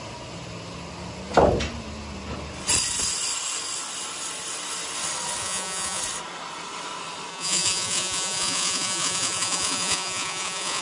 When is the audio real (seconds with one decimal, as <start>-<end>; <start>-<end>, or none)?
0.0-5.4; 6.0-7.3